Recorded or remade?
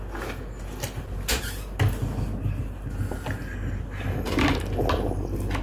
recorded